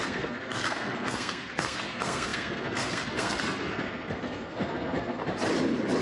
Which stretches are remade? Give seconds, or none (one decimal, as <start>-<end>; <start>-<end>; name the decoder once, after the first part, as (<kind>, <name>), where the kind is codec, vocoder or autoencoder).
0.0-5.2 (codec, SNAC)